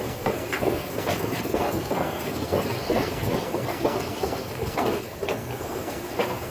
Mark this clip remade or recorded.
remade